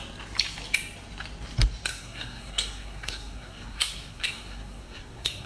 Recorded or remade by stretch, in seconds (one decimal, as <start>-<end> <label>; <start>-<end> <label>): 0.0-1.9 recorded; 1.9-5.5 remade

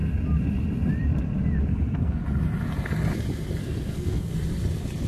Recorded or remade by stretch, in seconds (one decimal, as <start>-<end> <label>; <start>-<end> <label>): 0.0-1.7 recorded; 1.7-2.2 remade; 2.2-3.6 recorded; 3.6-4.3 remade; 4.3-5.1 recorded

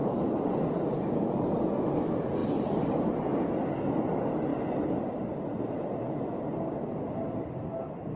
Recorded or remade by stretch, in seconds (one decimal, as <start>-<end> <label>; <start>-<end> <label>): 0.0-8.2 recorded